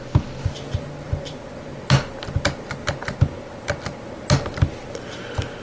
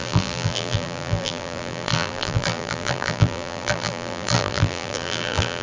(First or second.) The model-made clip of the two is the second